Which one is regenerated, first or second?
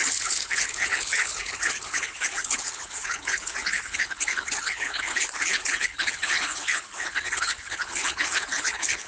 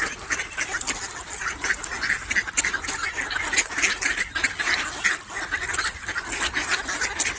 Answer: first